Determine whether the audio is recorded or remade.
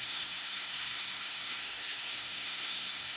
remade